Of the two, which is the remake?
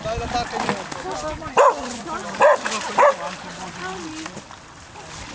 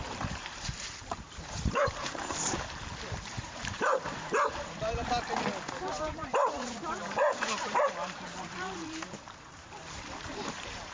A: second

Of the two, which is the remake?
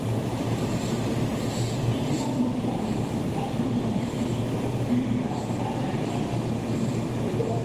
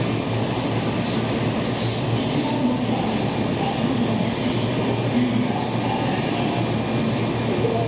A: first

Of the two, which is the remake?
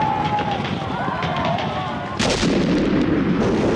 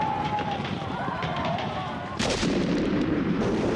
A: second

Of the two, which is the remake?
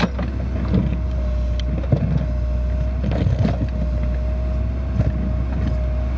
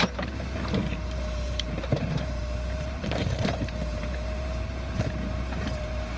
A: second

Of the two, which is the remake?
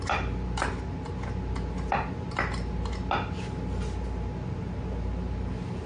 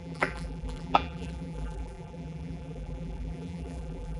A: second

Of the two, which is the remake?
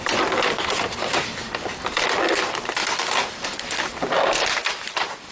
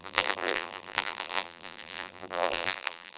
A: second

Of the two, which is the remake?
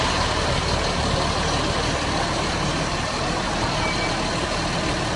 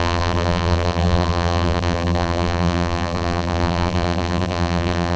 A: second